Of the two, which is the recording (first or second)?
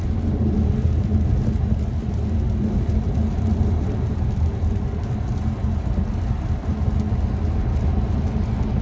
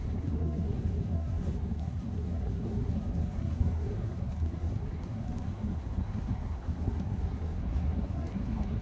first